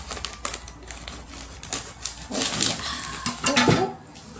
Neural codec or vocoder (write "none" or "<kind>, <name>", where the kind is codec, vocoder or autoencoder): none